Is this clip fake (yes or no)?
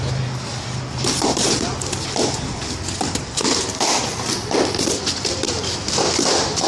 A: yes